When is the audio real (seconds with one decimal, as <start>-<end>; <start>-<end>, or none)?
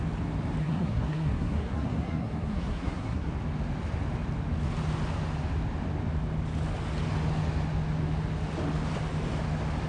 0.0-0.6; 3.3-9.9